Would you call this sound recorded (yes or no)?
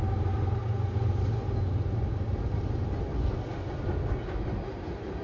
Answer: yes